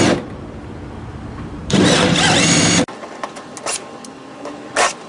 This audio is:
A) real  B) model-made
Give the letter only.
A